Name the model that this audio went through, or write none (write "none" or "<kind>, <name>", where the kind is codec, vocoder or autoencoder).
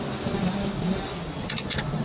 none